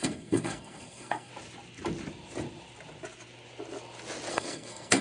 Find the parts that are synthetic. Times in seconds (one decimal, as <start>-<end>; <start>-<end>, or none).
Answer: 0.0-1.3; 4.3-5.0